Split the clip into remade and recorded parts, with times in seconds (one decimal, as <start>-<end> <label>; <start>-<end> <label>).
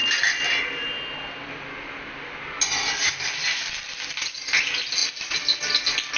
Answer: 0.0-6.2 recorded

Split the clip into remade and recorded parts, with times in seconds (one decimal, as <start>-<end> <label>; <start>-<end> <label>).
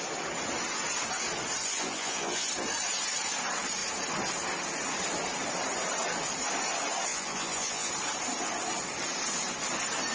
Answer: 0.0-1.6 recorded; 1.6-2.5 remade; 2.5-7.1 recorded; 7.1-7.9 remade; 7.9-10.1 recorded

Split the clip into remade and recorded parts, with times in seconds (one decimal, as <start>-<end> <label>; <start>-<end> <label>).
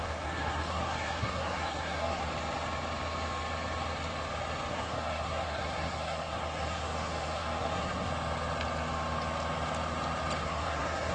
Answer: 0.0-2.2 remade; 2.2-4.7 recorded; 4.7-8.1 remade; 8.1-10.4 recorded; 10.4-11.1 remade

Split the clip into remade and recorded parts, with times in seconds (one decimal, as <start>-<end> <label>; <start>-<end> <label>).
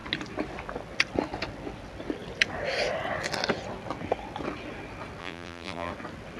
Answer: 0.0-5.2 recorded; 5.2-5.9 remade; 5.9-6.4 recorded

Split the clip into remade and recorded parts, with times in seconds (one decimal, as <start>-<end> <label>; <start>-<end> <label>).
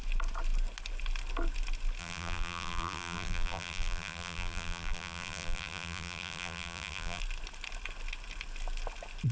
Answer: 0.0-2.0 recorded; 2.0-7.2 remade; 7.2-9.3 recorded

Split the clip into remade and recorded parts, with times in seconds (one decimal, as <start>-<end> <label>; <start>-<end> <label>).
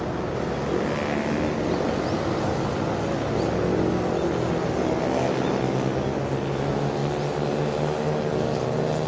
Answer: 0.0-9.1 recorded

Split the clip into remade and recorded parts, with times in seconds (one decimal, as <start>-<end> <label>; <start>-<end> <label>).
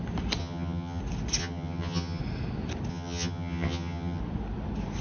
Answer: 0.0-0.4 recorded; 0.4-1.0 remade; 1.0-1.4 recorded; 1.4-2.2 remade; 2.2-2.9 recorded; 2.9-4.2 remade; 4.2-5.0 recorded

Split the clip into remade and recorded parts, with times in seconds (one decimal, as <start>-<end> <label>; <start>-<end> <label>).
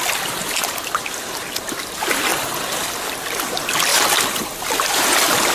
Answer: 0.0-5.5 recorded